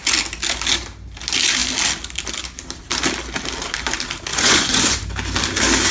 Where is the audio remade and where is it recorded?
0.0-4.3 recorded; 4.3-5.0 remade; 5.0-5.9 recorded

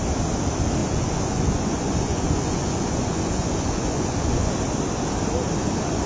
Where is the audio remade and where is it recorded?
0.0-0.8 recorded; 0.8-4.5 remade; 4.5-6.1 recorded

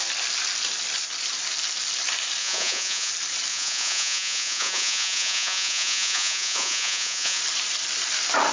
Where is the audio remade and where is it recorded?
0.0-2.4 recorded; 2.4-3.1 remade; 3.1-3.5 recorded; 3.5-7.4 remade; 7.4-8.5 recorded

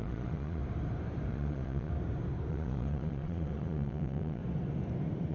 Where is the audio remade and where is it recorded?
0.0-0.6 remade; 0.6-1.3 recorded; 1.3-1.9 remade; 1.9-2.5 recorded; 2.5-4.4 remade; 4.4-5.3 recorded

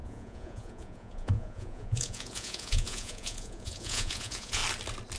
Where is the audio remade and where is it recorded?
0.0-4.6 remade; 4.6-5.2 recorded

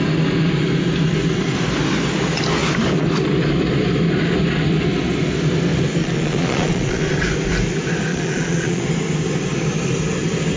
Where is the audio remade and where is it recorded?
0.0-6.0 recorded; 6.0-7.1 remade; 7.1-8.1 recorded; 8.1-8.8 remade; 8.8-10.6 recorded

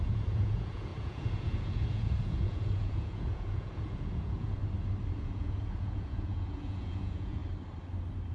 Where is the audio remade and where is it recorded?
0.0-4.6 remade; 4.6-5.2 recorded; 5.2-7.4 remade; 7.4-8.3 recorded

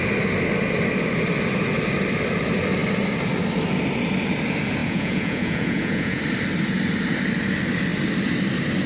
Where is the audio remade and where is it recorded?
0.0-4.8 recorded; 4.8-6.2 remade; 6.2-8.9 recorded